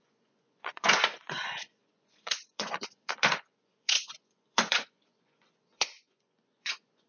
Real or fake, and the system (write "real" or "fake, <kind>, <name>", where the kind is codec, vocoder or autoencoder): fake, vocoder, Vocos